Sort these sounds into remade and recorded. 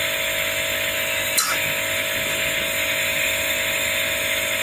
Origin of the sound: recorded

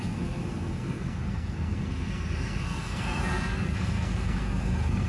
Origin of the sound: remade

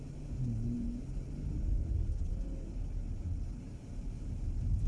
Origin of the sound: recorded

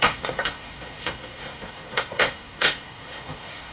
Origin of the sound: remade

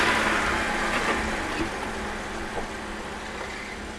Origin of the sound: recorded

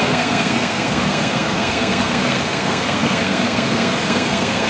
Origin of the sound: remade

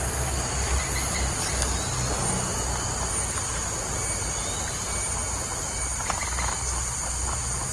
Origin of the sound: recorded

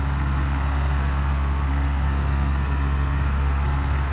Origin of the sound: remade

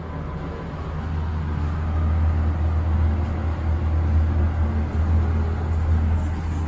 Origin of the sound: recorded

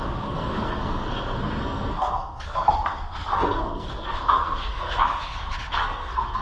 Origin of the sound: remade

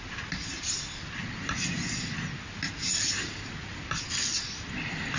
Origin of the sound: recorded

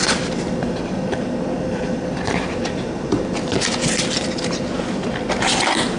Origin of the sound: recorded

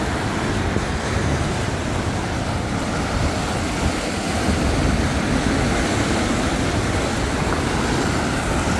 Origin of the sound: recorded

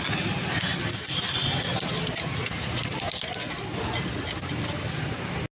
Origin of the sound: recorded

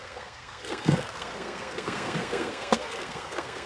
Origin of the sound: remade